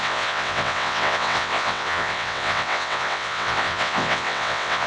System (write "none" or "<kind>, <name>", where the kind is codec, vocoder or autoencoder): vocoder, WaveNeXt